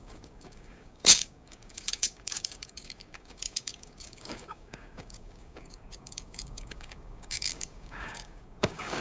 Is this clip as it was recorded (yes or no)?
no